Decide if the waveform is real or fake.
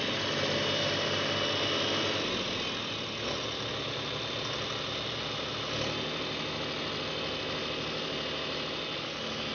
real